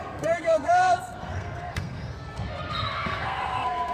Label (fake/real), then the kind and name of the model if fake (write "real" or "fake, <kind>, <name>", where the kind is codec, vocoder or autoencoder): fake, codec, SNAC